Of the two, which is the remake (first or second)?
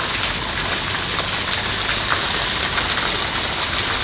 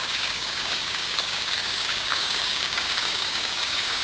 second